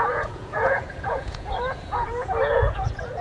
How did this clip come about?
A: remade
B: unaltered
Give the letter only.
A